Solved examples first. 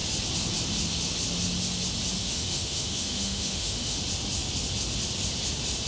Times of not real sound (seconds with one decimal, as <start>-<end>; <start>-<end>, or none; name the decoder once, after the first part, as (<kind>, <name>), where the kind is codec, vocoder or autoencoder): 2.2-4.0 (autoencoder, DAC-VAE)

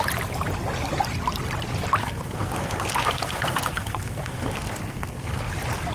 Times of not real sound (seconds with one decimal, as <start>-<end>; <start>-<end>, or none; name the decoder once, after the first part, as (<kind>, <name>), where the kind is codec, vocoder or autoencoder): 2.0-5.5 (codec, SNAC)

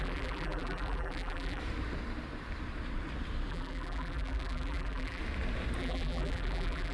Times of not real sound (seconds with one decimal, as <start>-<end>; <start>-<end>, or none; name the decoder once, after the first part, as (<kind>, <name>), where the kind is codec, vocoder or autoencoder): 0.0-1.6 (vocoder, BigVGAN v2); 3.5-5.2; 5.8-6.9

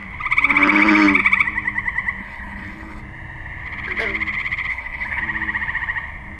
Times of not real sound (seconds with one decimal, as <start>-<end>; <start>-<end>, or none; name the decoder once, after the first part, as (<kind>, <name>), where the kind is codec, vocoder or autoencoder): 2.2-3.0 (codec, HILCodec); 4.7-5.2

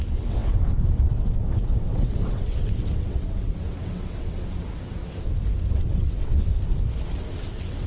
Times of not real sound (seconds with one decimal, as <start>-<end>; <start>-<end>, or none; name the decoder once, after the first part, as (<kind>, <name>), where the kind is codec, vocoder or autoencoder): 0.0-5.0 (vocoder, WaveNeXt); 5.7-6.5; 7.4-7.9

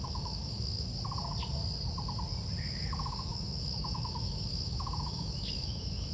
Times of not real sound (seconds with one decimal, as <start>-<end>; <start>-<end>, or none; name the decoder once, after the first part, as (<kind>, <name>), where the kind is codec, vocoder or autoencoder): 0.0-0.9 (autoencoder, DAC-VAE); 2.6-6.1